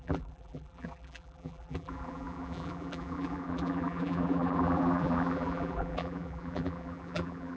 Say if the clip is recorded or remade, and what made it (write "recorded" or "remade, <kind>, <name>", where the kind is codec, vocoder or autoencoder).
remade, vocoder, BigVGAN v2